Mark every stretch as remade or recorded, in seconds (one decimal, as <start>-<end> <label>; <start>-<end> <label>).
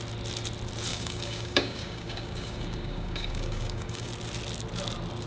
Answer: 0.0-0.9 recorded; 0.9-4.1 remade; 4.1-5.3 recorded